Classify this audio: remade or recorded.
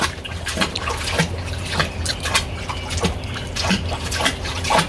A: recorded